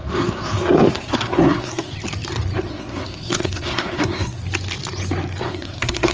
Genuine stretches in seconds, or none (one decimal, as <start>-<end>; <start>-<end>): 1.9-2.6; 4.4-5.4

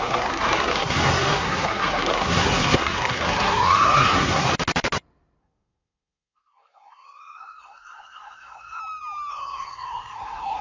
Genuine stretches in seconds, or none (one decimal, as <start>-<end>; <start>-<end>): 4.5-5.4; 8.8-9.3